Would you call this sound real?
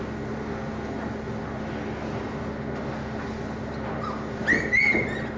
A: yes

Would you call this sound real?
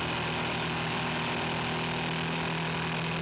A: yes